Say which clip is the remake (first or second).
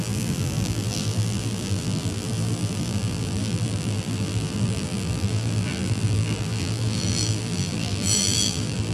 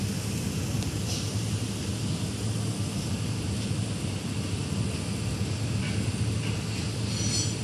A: first